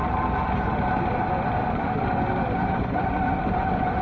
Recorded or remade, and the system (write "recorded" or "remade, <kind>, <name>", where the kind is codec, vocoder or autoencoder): recorded